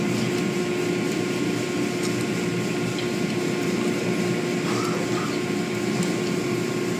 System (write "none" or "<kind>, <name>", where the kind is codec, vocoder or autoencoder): none